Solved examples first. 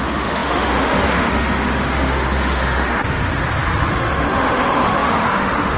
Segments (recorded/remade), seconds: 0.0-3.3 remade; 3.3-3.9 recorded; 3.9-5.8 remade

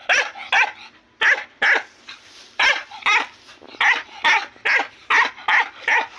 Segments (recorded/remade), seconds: 0.0-6.2 recorded